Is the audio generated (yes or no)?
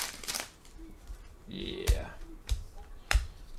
yes